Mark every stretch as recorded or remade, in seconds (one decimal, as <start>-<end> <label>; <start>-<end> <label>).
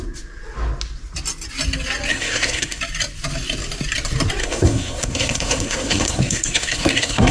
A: 0.0-2.1 recorded; 2.1-2.8 remade; 2.8-4.4 recorded; 4.4-7.3 remade